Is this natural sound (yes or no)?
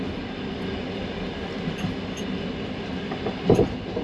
yes